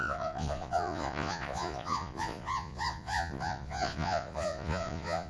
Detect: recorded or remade remade